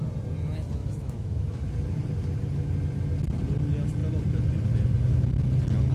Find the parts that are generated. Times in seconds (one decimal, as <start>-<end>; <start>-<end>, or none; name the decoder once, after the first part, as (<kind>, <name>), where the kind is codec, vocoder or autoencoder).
0.8-1.6 (autoencoder, DAC-VAE)